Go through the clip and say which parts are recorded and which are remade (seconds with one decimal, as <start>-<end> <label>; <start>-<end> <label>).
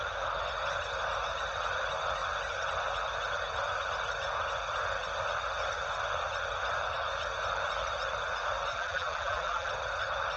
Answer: 0.0-8.7 recorded; 8.7-9.7 remade; 9.7-10.4 recorded